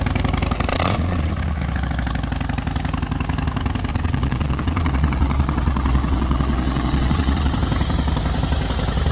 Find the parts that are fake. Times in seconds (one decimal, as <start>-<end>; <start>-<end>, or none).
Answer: 0.7-1.3; 3.9-7.5